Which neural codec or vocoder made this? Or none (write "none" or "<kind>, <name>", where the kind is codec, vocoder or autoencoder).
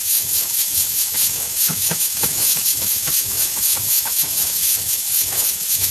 autoencoder, DAC-VAE